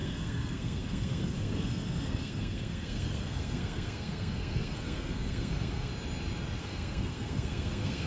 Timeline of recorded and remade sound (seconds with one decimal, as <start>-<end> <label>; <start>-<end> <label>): 0.0-5.9 remade; 5.9-6.6 recorded; 6.6-8.1 remade